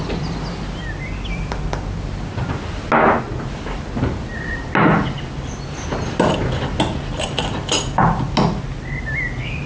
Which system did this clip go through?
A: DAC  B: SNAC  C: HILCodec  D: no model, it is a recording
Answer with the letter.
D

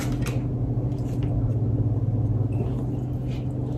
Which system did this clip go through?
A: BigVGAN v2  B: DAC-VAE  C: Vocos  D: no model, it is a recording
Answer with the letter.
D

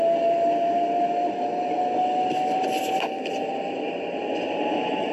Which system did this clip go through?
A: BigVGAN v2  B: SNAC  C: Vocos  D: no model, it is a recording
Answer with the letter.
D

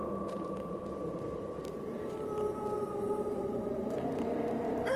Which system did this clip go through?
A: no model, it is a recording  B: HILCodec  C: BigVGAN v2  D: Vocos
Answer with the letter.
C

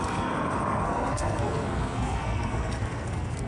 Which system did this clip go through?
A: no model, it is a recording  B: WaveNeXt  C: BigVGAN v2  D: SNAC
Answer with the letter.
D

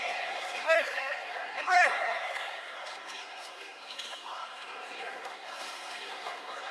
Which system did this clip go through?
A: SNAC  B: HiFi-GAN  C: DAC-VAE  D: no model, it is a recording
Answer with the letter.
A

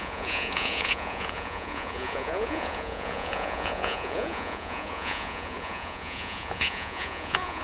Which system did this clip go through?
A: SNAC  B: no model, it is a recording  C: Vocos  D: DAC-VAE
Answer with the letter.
C